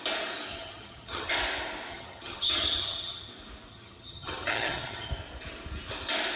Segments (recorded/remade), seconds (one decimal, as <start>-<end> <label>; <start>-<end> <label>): 0.0-0.5 recorded; 0.5-1.3 remade; 1.3-1.9 recorded; 1.9-3.3 remade; 3.3-3.7 recorded; 3.7-5.1 remade; 5.1-6.4 recorded